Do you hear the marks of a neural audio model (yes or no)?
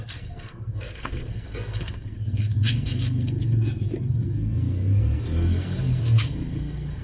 yes